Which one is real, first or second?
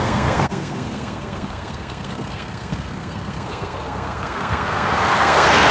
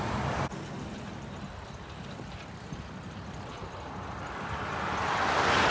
second